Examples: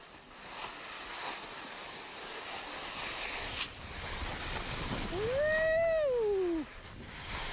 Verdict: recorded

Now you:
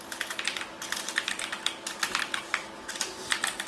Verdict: recorded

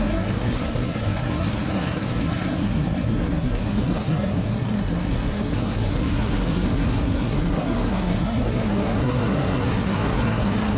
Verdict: remade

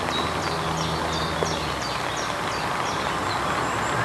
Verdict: recorded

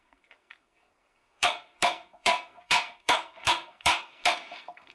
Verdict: remade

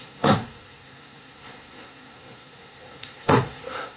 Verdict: remade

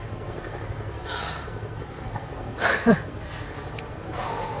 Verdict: remade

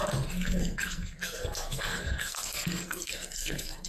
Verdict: remade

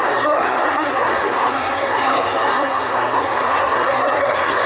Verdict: remade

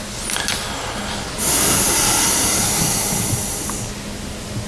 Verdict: recorded